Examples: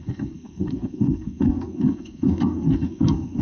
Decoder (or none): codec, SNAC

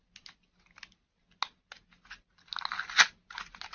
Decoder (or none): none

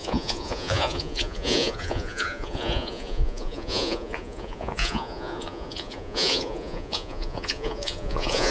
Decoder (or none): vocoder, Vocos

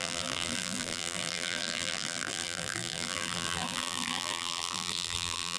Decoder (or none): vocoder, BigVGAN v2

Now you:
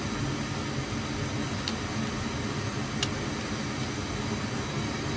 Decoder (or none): none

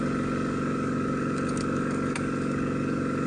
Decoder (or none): codec, DAC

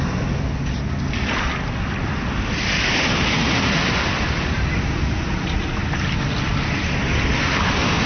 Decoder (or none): none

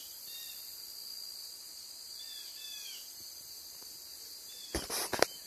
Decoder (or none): none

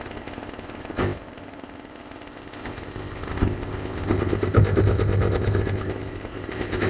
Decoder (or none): codec, ZipCodec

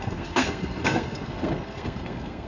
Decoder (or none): codec, SNAC